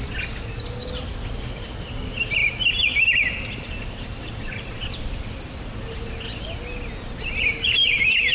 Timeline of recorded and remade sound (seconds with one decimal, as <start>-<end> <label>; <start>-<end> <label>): 0.0-8.3 recorded